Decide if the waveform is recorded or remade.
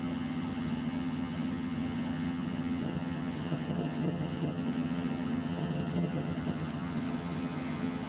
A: remade